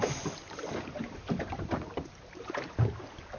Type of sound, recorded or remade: recorded